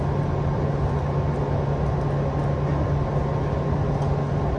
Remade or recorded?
recorded